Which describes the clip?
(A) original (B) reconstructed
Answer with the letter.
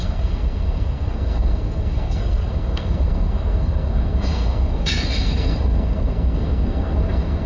B